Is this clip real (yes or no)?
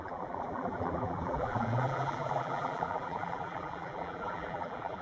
no